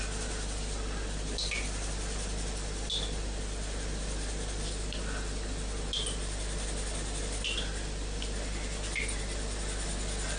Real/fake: real